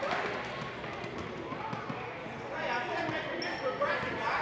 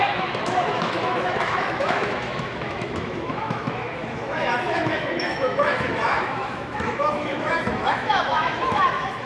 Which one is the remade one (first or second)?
second